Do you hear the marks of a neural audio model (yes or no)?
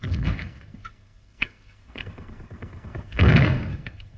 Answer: yes